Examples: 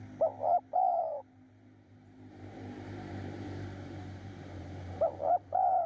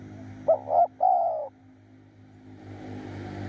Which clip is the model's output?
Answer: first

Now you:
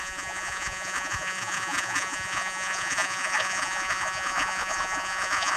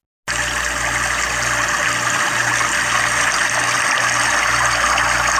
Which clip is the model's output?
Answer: first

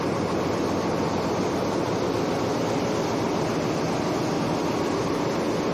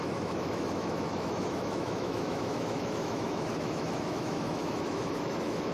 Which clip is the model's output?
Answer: second